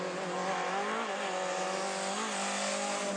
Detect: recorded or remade recorded